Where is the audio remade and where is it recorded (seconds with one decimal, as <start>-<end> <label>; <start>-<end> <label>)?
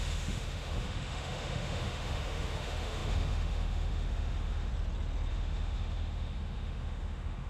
0.0-4.7 remade; 4.7-5.3 recorded; 5.3-7.5 remade